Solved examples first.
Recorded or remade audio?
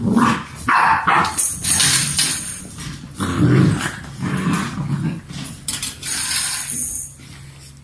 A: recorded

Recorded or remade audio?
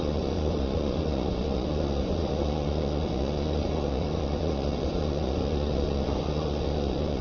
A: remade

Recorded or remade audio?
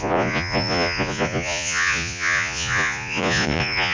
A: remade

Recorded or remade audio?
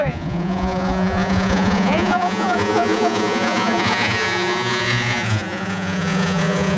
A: remade